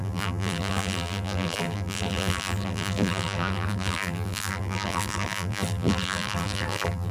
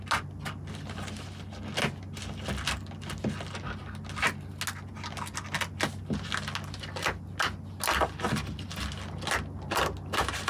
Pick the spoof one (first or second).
first